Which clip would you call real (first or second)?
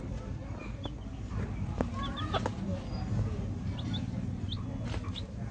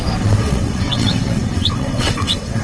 first